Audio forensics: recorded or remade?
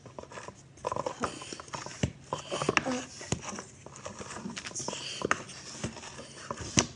recorded